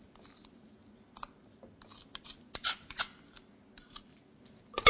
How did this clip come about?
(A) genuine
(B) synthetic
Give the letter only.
A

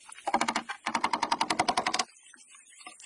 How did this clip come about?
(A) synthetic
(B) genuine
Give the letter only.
B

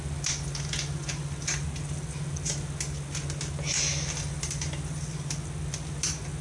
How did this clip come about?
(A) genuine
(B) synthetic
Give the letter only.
A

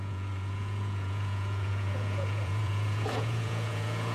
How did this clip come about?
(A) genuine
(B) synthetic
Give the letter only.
B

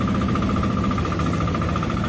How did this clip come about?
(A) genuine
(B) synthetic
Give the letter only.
A